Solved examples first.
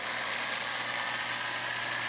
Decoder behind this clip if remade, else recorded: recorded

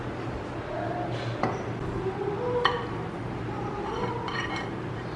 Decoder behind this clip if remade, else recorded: recorded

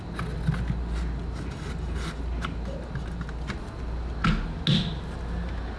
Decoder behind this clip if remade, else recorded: recorded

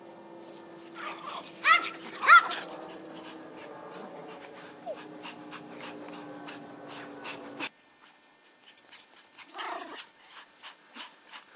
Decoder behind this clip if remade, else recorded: recorded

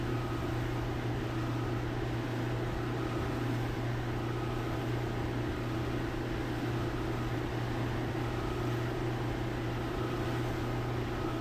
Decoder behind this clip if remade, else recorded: recorded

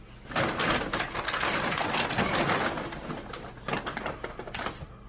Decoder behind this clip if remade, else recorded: recorded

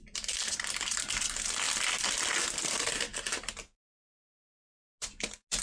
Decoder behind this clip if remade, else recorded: recorded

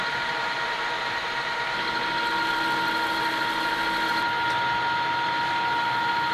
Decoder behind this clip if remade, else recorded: recorded